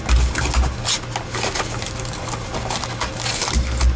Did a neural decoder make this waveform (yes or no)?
no